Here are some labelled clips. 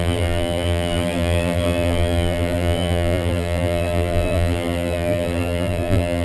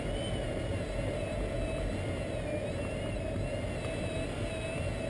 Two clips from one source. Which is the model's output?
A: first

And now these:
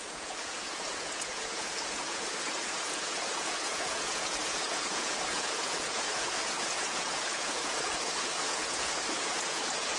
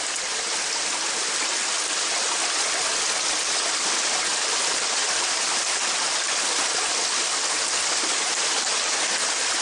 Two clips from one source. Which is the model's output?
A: first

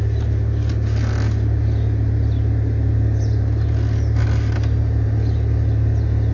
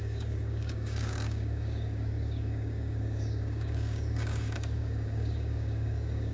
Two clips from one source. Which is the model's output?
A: second